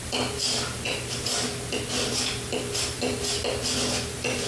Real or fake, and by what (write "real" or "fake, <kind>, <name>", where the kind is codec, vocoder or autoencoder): real